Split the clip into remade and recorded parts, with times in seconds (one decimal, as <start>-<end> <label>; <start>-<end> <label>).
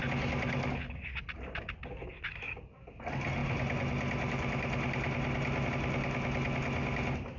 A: 0.0-7.4 recorded